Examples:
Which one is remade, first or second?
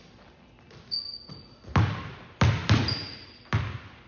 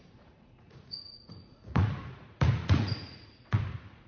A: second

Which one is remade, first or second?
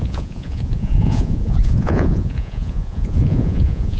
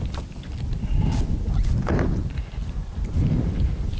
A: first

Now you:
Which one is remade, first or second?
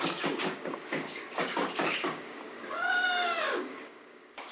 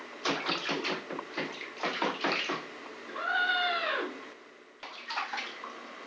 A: first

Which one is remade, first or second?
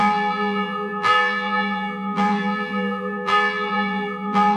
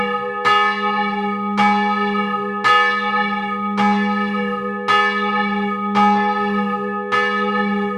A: first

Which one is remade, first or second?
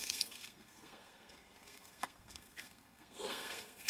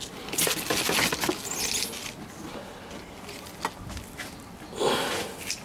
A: first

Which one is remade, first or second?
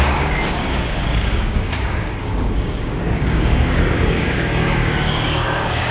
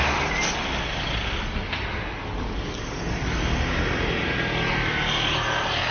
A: first